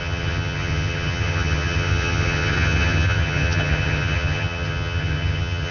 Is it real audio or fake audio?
fake